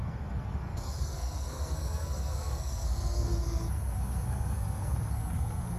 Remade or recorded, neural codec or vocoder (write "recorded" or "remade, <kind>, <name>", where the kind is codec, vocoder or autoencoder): remade, codec, SNAC